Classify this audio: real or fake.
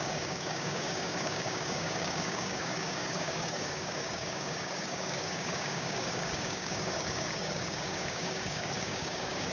fake